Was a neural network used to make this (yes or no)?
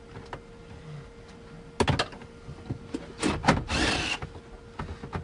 no